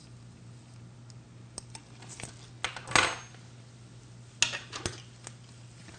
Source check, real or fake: real